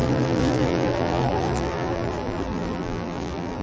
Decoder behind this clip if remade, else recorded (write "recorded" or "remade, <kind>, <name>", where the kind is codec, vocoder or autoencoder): remade, vocoder, BigVGAN v2